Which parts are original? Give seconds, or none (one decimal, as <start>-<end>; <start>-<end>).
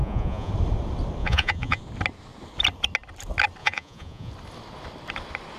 0.5-1.2; 1.8-3.6; 4.3-5.6